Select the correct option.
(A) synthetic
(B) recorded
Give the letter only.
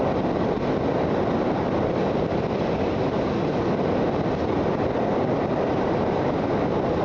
A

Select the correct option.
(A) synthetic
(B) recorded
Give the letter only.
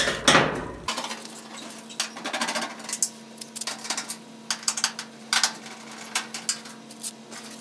B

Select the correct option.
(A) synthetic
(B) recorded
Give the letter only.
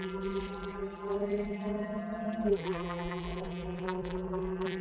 A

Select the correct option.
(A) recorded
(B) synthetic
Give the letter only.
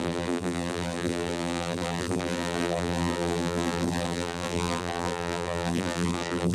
B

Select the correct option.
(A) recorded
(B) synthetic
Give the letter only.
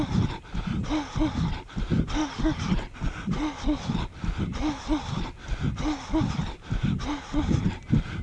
A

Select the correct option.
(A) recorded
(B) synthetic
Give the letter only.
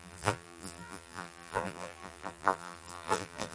B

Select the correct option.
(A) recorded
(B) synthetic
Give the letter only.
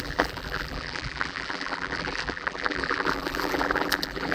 B